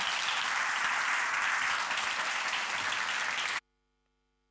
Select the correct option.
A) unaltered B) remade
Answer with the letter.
A